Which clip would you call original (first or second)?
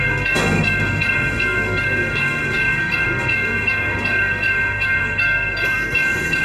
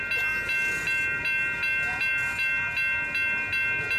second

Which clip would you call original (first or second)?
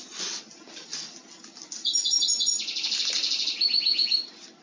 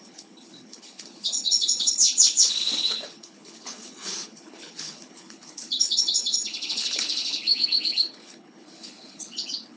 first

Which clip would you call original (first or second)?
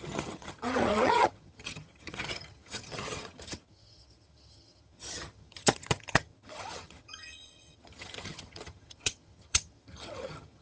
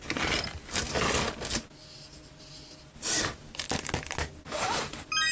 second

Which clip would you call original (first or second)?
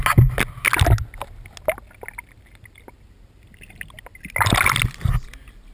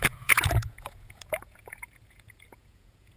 first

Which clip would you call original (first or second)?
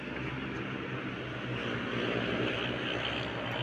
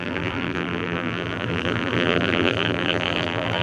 first